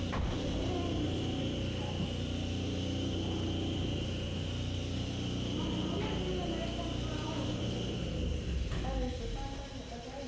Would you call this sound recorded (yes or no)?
yes